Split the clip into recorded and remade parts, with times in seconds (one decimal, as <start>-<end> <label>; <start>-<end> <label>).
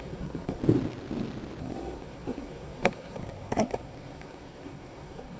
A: 0.0-0.6 remade; 0.6-1.6 recorded; 1.6-5.4 remade